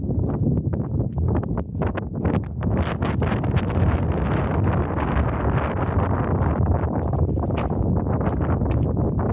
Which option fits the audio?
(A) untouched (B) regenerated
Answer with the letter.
A